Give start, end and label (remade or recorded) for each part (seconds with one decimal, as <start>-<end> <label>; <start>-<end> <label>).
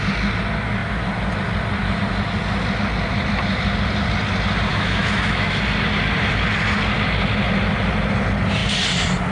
0.0-4.7 recorded; 4.7-5.6 remade; 5.6-9.3 recorded